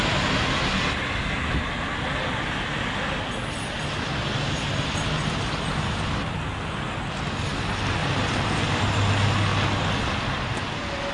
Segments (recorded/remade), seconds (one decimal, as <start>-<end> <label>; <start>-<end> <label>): 0.0-8.0 recorded; 8.0-9.1 remade; 9.1-11.1 recorded